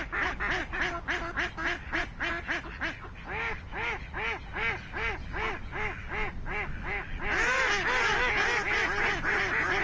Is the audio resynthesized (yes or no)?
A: no